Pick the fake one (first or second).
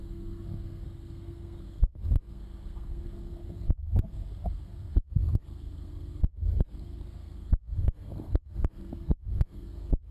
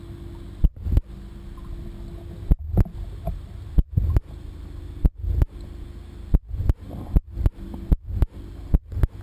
first